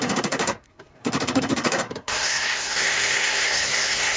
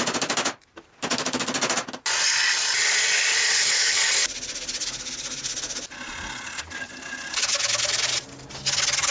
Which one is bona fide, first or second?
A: second